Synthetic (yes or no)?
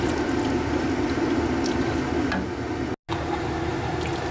no